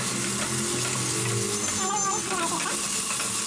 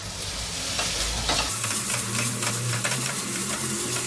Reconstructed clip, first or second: second